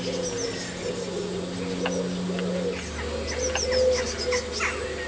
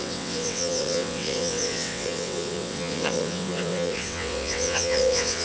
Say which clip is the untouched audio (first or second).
first